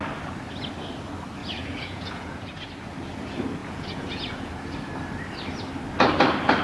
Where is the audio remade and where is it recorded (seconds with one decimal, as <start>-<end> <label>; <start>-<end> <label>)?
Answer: 0.0-1.4 recorded; 1.4-2.7 remade; 2.7-3.6 recorded; 3.6-4.5 remade; 4.5-6.6 recorded